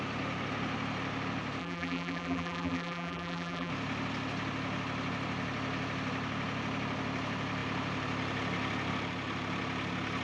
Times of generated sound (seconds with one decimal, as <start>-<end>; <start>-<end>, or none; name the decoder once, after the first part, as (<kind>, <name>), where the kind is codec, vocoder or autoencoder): 1.6-3.7 (vocoder, BigVGAN v2)

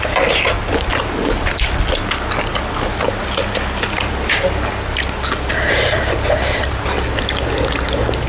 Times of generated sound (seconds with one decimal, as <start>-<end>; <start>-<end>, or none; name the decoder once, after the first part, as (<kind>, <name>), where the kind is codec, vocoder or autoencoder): none

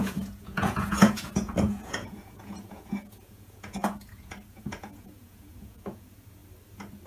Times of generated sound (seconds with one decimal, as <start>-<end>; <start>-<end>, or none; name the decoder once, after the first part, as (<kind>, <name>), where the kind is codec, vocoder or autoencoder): 0.0-6.4 (vocoder, Vocos)

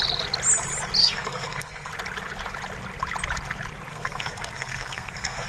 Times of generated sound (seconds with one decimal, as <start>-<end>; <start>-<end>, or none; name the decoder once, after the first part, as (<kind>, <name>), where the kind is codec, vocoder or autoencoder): 1.0-1.9 (codec, SNAC); 3.9-5.5

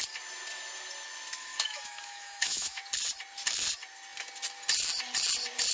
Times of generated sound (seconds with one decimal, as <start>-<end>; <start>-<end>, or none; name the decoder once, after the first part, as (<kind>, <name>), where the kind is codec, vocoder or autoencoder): 1.4-2.8 (autoencoder, DAC-VAE)

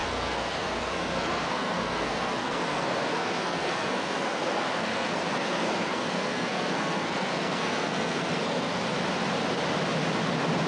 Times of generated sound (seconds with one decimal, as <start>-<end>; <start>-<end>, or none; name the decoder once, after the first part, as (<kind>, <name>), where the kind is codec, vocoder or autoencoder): 0.0-8.8 (codec, SNAC)

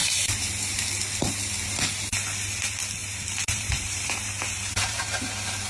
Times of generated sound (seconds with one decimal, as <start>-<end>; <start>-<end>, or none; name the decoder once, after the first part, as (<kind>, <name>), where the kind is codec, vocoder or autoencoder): 0.0-0.9 (vocoder, BigVGAN v2); 3.0-5.2

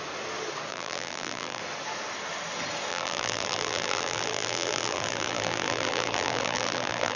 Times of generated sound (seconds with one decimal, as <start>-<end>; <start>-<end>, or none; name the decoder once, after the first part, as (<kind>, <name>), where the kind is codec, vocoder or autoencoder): 0.7-1.6 (vocoder, BigVGAN v2); 2.9-7.2